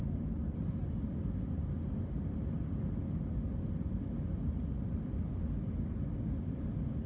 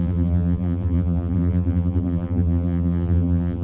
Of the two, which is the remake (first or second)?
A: second